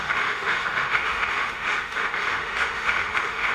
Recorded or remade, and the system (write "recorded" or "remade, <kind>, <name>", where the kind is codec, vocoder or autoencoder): remade, autoencoder, DAC-VAE